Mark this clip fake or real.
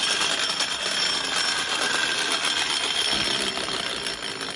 real